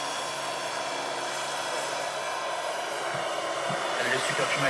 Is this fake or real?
real